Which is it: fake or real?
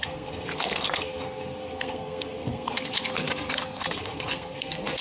fake